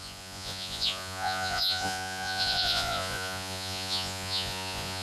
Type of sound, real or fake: fake